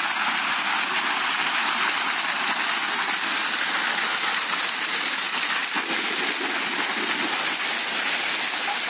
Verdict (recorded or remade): recorded